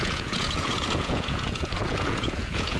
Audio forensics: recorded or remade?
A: remade